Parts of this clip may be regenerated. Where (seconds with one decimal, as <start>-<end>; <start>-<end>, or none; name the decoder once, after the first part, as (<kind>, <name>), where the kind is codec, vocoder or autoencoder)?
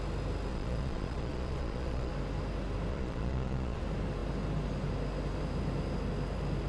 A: 0.5-2.1 (vocoder, Vocos); 2.9-3.8